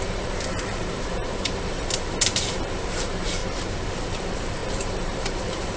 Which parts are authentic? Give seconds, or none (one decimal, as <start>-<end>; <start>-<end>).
3.4-4.0